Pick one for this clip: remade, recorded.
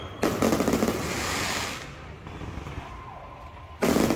recorded